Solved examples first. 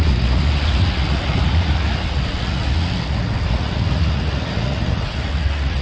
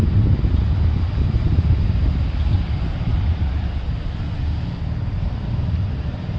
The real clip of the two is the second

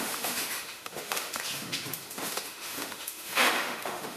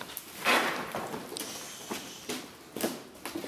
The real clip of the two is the second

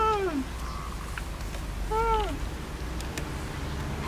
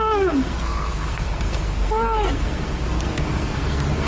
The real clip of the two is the first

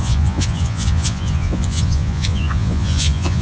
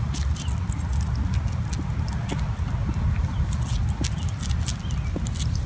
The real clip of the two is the second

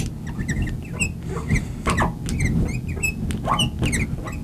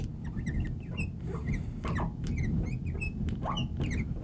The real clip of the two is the first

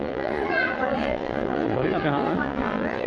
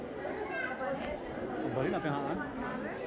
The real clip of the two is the second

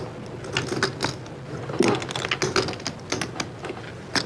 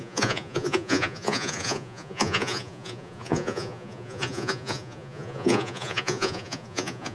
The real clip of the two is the first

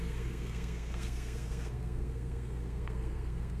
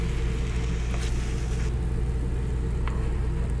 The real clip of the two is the second